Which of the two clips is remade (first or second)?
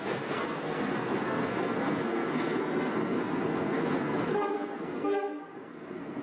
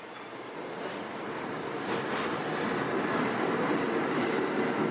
first